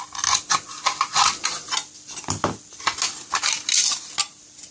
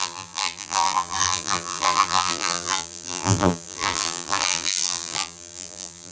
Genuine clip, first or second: first